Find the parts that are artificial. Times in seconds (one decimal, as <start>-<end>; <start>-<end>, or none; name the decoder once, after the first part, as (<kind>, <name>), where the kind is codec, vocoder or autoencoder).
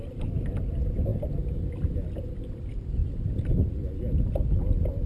none